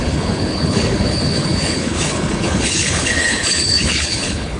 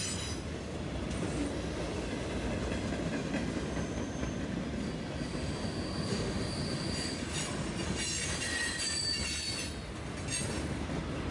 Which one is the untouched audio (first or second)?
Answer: second